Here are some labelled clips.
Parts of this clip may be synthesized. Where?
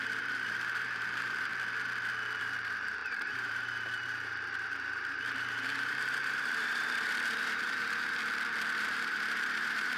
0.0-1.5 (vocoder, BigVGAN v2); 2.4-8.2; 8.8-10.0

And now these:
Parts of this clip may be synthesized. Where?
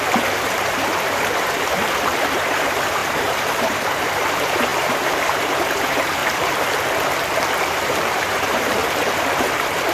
0.0-6.2 (vocoder, BigVGAN v2); 7.7-8.8; 9.4-9.9